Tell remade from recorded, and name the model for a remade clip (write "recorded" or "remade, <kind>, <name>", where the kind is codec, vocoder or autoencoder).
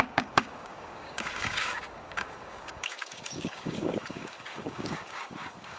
remade, codec, DAC